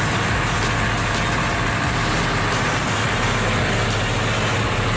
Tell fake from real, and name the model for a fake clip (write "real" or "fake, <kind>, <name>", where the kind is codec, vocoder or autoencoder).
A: real